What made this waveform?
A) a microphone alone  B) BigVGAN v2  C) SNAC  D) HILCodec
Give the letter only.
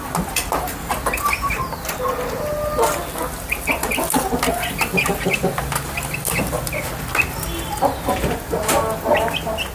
A